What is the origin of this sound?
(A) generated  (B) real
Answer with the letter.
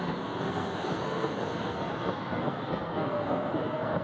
A